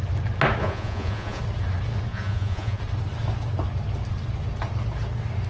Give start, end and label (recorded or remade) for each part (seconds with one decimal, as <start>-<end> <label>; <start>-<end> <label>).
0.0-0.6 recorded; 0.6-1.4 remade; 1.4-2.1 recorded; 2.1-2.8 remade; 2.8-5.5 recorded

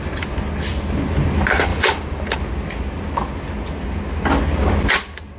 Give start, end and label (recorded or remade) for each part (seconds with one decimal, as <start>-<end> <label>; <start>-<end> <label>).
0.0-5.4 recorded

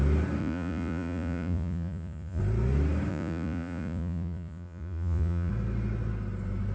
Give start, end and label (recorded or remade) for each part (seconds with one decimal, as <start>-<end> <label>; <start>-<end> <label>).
0.0-0.4 recorded; 0.4-2.4 remade; 2.4-3.1 recorded; 3.1-5.5 remade; 5.5-6.7 recorded

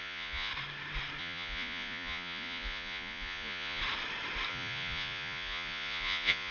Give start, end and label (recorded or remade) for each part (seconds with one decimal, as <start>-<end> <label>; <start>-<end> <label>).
0.0-0.5 remade; 0.5-1.2 recorded; 1.2-3.8 remade; 3.8-4.5 recorded; 4.5-6.5 remade